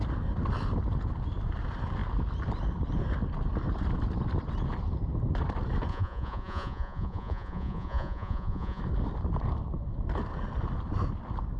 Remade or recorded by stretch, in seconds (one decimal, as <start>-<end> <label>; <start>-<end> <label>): 0.0-5.9 recorded; 5.9-8.8 remade; 8.8-11.6 recorded